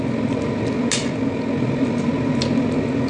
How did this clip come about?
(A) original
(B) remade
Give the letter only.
A